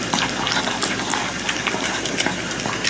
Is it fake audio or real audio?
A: real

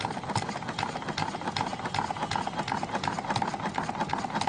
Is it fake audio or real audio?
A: real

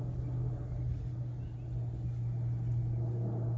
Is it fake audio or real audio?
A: real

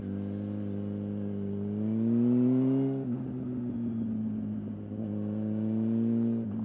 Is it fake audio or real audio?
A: real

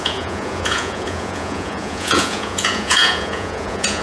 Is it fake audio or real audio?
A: fake